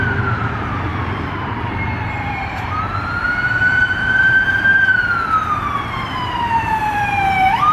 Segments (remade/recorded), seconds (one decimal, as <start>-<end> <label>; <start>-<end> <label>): 0.0-4.7 remade; 4.7-6.1 recorded; 6.1-7.7 remade